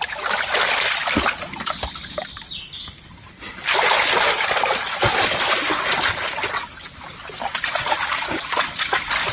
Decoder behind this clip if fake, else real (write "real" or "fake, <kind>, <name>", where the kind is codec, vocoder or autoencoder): real